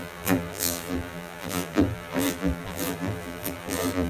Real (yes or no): no